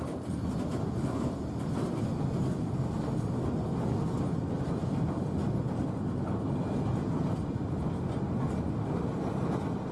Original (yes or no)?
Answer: yes